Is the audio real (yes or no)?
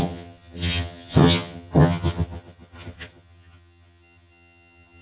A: no